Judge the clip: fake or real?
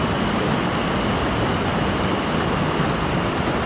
real